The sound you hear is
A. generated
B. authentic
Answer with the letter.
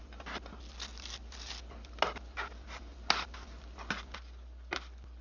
B